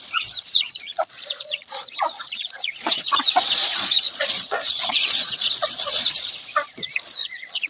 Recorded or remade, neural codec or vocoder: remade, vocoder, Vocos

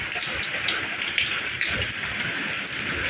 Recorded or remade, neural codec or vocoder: recorded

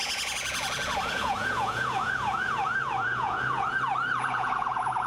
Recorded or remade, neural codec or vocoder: remade, vocoder, Vocos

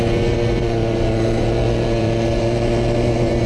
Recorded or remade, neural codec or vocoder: remade, vocoder, Vocos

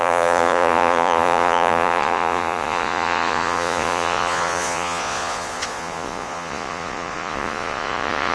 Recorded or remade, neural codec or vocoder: remade, vocoder, Vocos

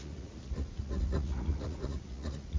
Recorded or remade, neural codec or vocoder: remade, vocoder, Vocos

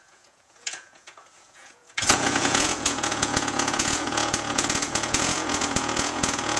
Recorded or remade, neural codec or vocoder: remade, vocoder, Vocos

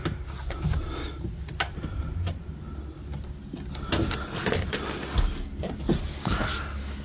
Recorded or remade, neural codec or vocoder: recorded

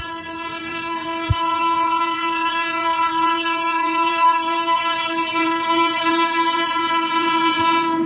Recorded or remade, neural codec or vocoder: remade, vocoder, Vocos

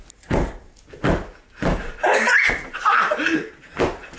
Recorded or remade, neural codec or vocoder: recorded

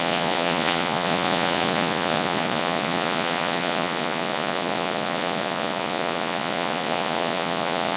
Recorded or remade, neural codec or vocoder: remade, vocoder, Vocos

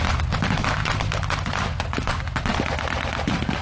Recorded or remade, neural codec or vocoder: recorded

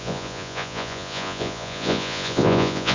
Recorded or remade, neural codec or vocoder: remade, vocoder, Vocos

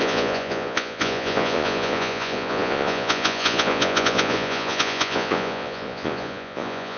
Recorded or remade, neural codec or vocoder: remade, vocoder, Vocos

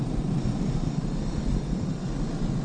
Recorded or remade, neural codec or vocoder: recorded